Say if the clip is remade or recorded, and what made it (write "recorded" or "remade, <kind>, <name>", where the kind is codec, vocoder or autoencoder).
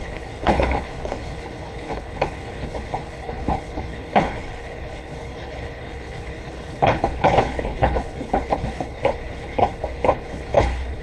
remade, codec, HILCodec